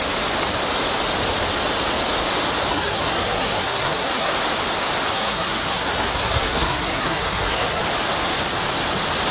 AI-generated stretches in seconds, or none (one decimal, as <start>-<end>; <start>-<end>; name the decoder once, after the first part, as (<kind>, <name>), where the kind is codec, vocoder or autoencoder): 2.7-4.3 (codec, SNAC); 5.1-7.8